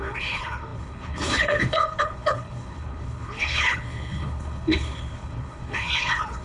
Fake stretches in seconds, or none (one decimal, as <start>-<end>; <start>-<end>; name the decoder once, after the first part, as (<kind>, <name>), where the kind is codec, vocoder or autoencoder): 0.0-6.4 (codec, HILCodec)